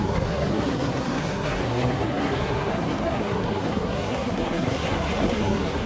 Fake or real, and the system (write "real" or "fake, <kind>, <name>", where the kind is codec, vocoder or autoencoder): fake, codec, SNAC